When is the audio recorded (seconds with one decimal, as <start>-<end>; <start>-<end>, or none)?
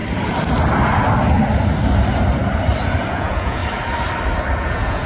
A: 0.0-3.1; 3.6-4.6